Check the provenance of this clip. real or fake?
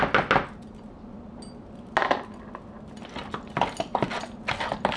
real